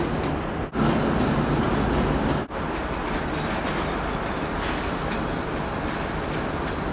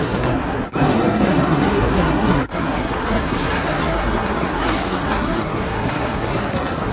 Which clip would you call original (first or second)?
first